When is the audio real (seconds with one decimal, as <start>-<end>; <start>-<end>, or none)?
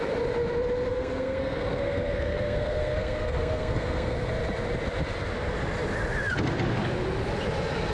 0.0-0.9; 4.3-7.9